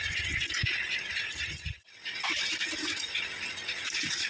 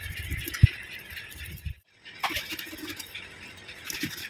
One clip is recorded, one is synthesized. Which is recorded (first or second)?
first